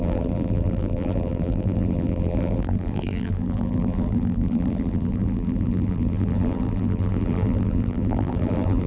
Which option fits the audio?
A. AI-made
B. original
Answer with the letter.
A